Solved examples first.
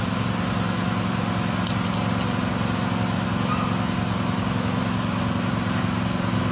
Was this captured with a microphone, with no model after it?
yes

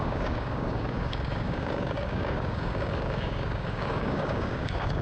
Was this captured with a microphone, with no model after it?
no